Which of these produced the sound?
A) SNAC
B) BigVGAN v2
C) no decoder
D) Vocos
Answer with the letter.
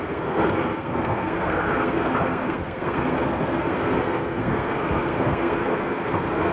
A